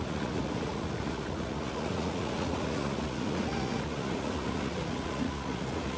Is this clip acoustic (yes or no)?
no